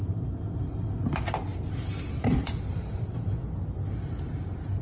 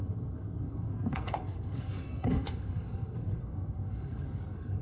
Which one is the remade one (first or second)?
second